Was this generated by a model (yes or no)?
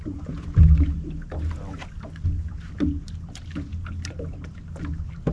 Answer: no